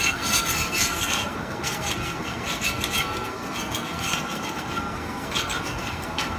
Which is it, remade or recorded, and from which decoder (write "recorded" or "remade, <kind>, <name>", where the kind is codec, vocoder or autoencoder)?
remade, codec, SNAC